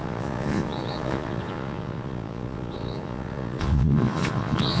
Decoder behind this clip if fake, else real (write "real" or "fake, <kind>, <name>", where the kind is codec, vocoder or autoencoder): fake, vocoder, Vocos